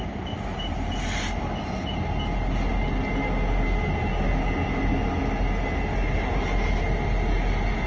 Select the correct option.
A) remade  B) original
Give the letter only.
B